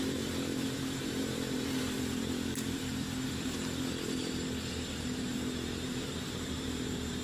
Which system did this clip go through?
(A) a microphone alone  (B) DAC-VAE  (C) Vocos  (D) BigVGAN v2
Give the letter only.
D